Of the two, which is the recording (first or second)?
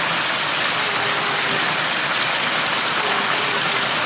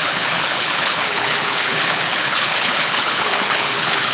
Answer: first